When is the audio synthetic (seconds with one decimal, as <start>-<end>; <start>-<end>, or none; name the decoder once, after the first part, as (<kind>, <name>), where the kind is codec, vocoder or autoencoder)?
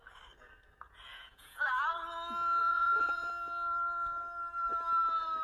1.1-1.9 (vocoder, Vocos); 2.6-3.3